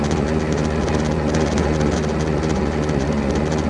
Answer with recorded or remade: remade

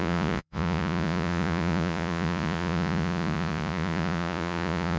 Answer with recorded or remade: remade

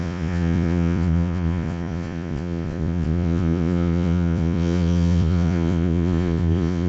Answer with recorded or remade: remade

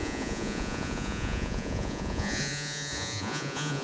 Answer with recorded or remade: remade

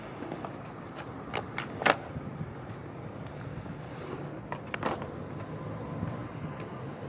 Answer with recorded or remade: recorded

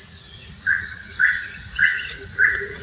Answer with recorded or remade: remade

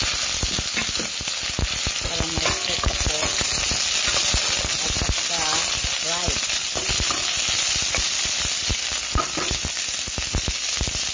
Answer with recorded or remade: recorded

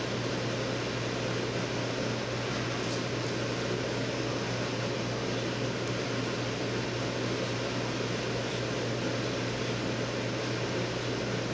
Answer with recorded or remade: recorded